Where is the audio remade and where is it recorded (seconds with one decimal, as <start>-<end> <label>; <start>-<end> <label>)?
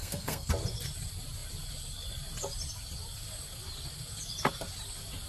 0.0-0.5 remade; 0.5-5.3 recorded